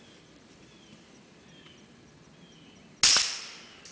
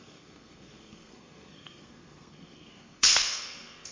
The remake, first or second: second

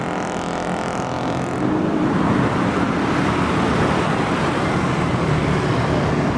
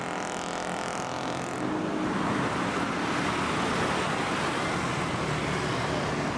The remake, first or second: first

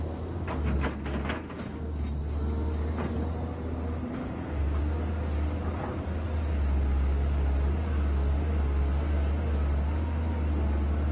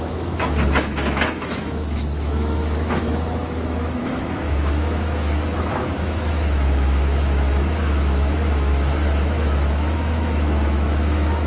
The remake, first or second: second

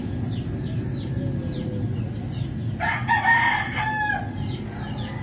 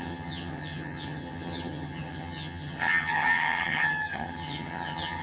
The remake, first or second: second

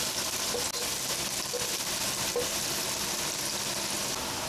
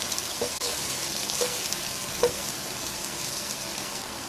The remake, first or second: second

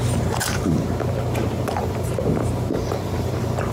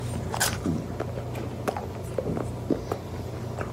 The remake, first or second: first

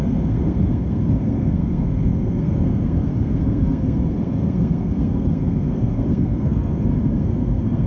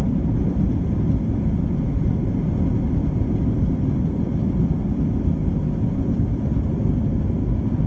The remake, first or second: first